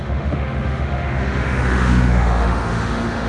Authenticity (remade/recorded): remade